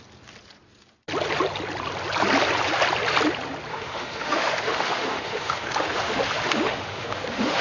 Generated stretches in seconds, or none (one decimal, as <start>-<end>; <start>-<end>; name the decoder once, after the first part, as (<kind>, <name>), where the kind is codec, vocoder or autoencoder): 3.7-7.6 (autoencoder, DAC-VAE)